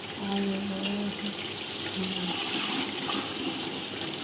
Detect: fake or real real